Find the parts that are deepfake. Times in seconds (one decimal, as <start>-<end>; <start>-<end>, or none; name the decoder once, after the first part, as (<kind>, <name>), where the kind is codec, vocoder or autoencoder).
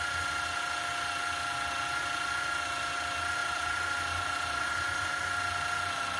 3.4-5.1 (vocoder, BigVGAN v2)